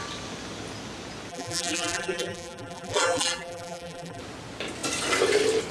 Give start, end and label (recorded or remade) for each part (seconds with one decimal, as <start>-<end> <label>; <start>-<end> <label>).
0.0-1.3 recorded; 1.3-4.2 remade; 4.2-5.7 recorded